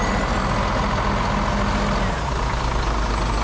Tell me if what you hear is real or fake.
real